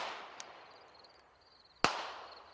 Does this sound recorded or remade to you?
recorded